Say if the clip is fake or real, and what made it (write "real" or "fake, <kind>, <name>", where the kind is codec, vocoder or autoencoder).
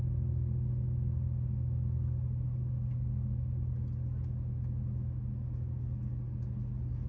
real